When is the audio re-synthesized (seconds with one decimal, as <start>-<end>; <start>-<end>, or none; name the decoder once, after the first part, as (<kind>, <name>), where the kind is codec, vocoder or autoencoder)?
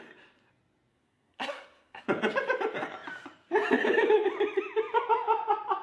0.9-2.0 (codec, SNAC)